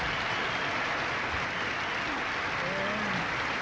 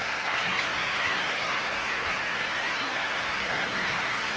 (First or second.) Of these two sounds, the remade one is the second